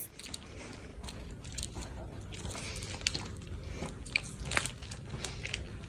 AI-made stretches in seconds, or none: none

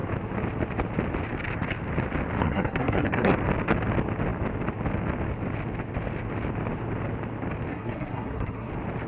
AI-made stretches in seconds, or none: 2.4-3.3 (codec, SNAC); 7.7-8.7

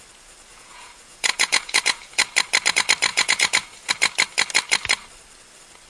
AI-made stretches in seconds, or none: 0.5-2.2 (vocoder, Vocos); 3.1-3.9

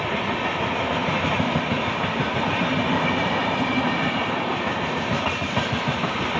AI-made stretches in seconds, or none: 1.0-3.0 (vocoder, BigVGAN v2); 3.4-4.9

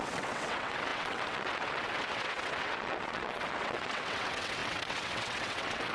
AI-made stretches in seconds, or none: 0.0-5.9 (vocoder, WaveNeXt)